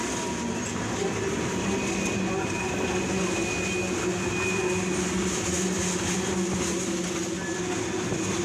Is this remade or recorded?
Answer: recorded